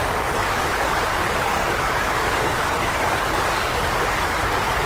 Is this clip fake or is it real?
fake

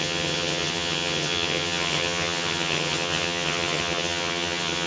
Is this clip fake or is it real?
fake